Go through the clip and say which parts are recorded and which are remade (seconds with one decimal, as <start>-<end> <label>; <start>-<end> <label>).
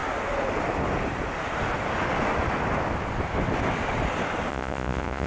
0.0-4.5 recorded; 4.5-5.3 remade